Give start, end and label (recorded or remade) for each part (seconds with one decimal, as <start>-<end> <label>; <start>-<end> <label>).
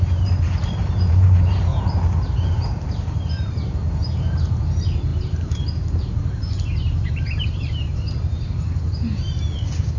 0.0-10.0 remade